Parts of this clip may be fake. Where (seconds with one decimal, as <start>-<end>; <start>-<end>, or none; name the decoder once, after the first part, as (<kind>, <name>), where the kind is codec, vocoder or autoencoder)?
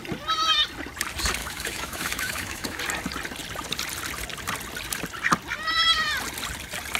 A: 1.4-2.8 (autoencoder, DAC-VAE)